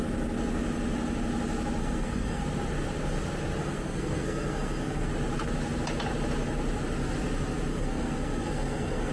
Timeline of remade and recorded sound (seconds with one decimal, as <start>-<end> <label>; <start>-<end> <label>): 0.0-1.8 recorded; 1.8-2.4 remade; 2.4-3.6 recorded; 3.6-5.1 remade; 5.1-7.7 recorded; 7.7-9.1 remade